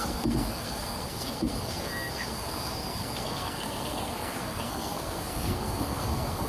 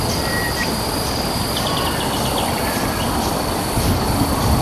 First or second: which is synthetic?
first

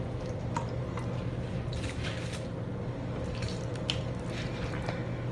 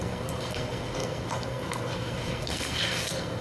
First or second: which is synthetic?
second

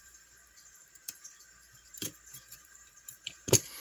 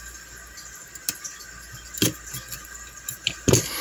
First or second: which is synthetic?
first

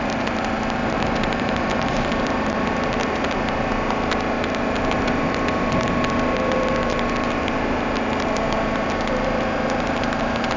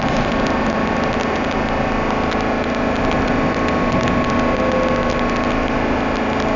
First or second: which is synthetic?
first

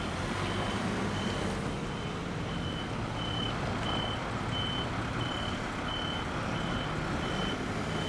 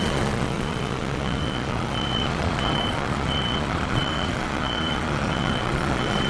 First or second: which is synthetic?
second